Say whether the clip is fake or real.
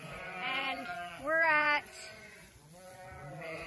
fake